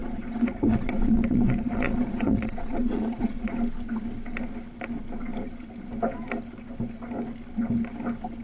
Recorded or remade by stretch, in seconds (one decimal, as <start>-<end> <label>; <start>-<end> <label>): 0.0-3.6 remade; 3.6-8.4 recorded